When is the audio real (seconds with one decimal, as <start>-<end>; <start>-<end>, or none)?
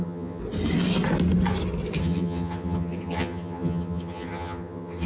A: 0.4-2.0